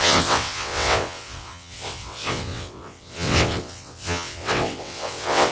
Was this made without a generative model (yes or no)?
no